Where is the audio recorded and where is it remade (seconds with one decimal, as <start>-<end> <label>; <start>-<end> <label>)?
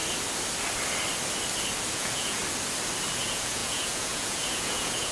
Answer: 0.0-1.9 recorded; 1.9-2.4 remade; 2.4-3.2 recorded; 3.2-5.1 remade